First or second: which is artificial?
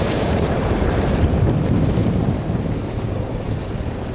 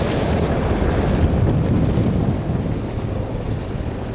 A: first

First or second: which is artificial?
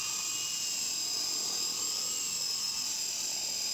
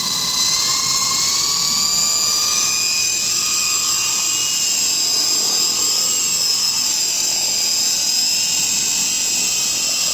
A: first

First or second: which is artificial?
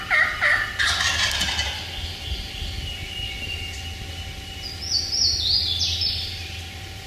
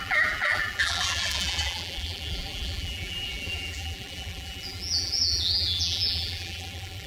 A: second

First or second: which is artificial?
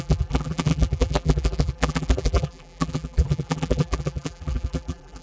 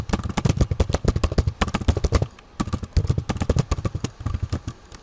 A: first